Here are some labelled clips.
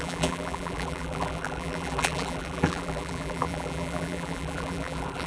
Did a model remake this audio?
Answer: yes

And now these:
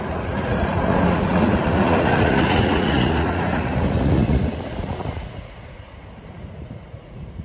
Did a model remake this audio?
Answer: yes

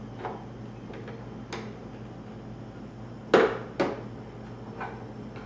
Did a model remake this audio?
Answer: no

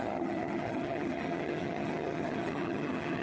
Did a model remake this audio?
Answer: yes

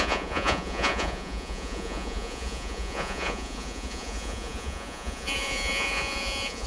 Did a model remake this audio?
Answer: yes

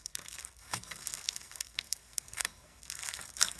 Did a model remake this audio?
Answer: yes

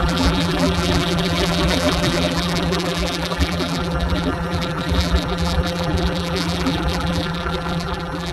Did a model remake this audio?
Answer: yes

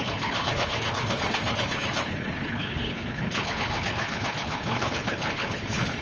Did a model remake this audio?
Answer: yes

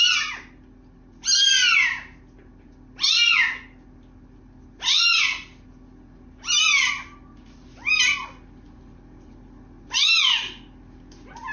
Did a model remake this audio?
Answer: no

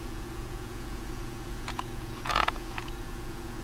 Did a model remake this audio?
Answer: yes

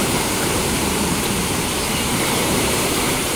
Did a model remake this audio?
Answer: yes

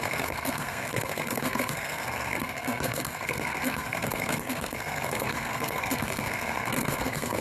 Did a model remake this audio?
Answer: yes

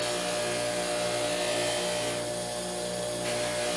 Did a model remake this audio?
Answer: no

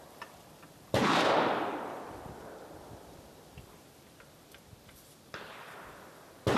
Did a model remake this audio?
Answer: yes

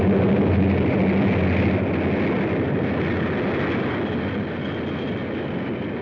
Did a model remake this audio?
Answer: no